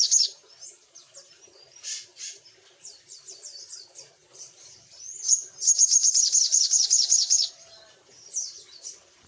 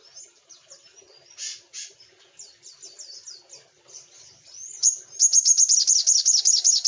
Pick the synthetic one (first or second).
first